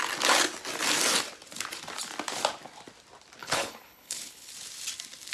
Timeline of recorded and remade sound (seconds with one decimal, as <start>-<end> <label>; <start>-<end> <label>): 0.0-3.4 recorded; 3.4-4.5 remade; 4.5-5.3 recorded

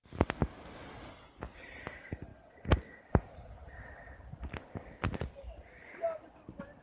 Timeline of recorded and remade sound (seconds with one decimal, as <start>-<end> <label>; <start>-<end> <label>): 0.0-6.8 recorded

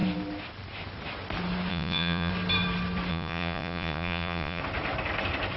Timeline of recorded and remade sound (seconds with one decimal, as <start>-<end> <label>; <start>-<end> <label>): 0.0-1.7 recorded; 1.7-2.3 remade; 2.3-3.1 recorded; 3.1-4.6 remade; 4.6-5.6 recorded

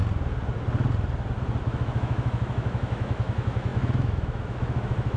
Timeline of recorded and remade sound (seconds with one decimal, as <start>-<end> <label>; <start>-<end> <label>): 0.0-1.6 recorded; 1.6-5.2 remade

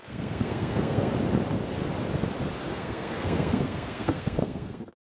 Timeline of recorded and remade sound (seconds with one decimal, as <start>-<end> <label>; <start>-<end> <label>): 0.0-1.1 remade; 1.1-2.7 recorded; 2.7-5.1 remade

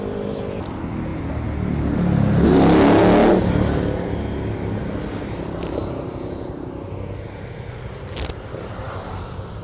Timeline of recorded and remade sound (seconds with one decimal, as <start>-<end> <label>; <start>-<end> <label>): 0.0-9.6 recorded

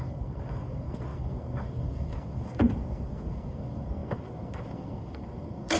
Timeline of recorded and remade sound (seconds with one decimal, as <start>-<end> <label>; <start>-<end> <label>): 0.0-5.8 remade